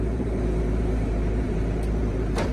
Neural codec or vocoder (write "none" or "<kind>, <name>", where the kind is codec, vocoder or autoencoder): vocoder, BigVGAN v2